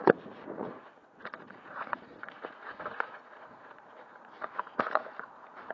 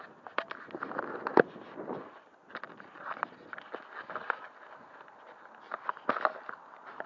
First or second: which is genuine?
second